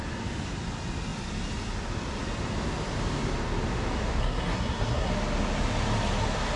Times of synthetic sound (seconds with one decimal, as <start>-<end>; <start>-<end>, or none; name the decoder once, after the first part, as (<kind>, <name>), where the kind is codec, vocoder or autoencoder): 4.2-5.1 (codec, SNAC)

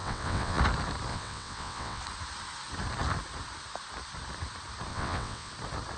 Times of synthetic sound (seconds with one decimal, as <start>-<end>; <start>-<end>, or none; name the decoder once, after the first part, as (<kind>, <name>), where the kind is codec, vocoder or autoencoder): 0.0-0.6 (vocoder, WaveNeXt); 1.1-2.0; 4.9-5.5

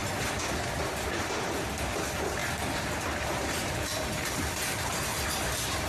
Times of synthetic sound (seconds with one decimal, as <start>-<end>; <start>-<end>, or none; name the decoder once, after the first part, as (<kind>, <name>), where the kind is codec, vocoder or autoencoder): 1.2-2.4 (vocoder, BigVGAN v2); 2.9-5.9

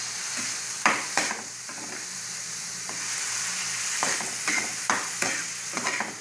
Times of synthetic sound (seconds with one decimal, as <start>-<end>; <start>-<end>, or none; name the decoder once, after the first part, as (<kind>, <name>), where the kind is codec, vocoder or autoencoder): 0.0-4.7 (vocoder, BigVGAN v2)

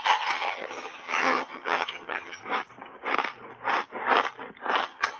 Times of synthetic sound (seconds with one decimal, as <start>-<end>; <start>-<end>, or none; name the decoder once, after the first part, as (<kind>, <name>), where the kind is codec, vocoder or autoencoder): 0.0-2.4 (vocoder, HiFi-GAN); 4.8-5.2

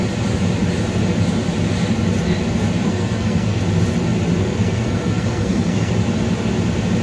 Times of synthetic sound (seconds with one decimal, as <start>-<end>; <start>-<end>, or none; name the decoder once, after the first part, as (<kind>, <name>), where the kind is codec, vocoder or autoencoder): 2.9-3.6 (codec, SNAC); 4.4-5.9